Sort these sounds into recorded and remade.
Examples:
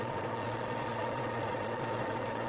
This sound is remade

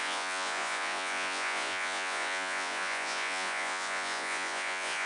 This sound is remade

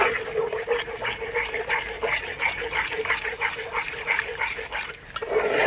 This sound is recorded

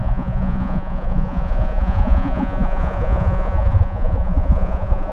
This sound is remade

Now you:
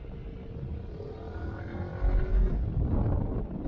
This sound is recorded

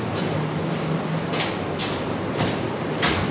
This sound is recorded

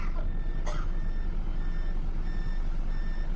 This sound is recorded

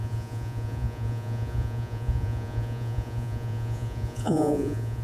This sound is remade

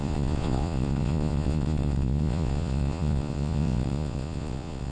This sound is remade